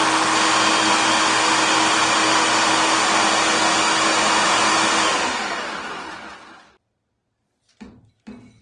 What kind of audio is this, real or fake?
real